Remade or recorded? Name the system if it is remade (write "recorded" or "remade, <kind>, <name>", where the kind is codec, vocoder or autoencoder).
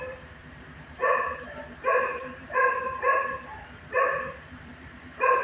remade, vocoder, BigVGAN v2